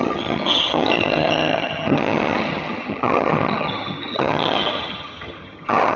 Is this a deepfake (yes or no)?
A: yes